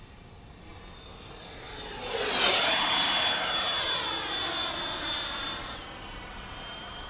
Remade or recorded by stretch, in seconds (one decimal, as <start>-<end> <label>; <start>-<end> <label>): 0.0-7.1 recorded